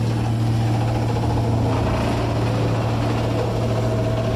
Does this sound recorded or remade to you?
recorded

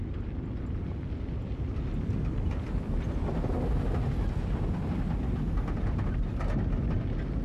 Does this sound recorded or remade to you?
recorded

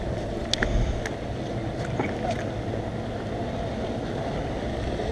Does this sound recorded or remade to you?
recorded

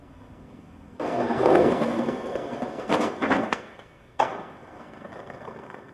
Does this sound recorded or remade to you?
remade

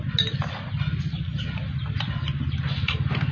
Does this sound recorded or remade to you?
recorded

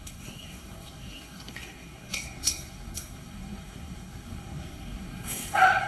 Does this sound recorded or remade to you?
remade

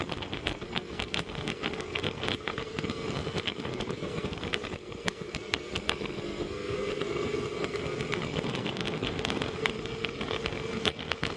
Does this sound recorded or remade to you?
remade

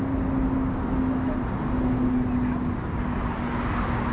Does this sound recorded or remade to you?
recorded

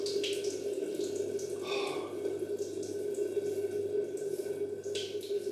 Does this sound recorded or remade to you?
recorded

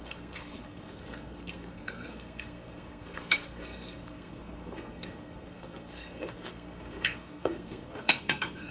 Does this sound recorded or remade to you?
remade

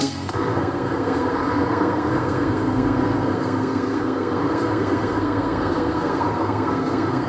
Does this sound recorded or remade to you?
remade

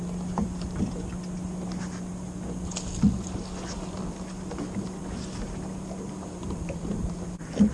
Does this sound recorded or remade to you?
recorded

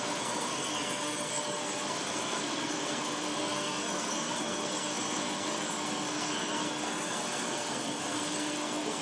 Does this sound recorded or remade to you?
remade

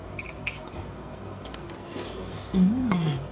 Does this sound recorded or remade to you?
remade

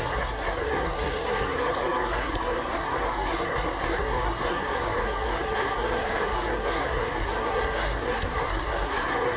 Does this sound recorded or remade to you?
remade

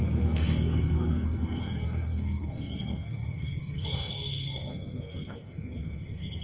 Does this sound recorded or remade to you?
remade